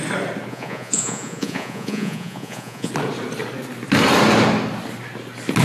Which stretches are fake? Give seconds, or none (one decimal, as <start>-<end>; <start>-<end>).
0.5-2.9